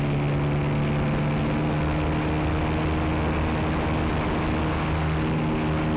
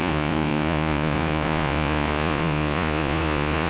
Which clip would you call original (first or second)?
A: first